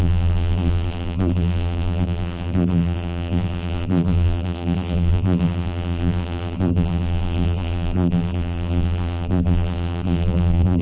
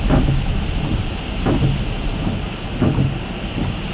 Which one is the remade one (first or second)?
first